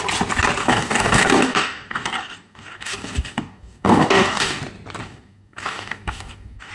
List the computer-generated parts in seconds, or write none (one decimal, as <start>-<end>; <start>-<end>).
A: 0.6-4.6; 5.0-6.7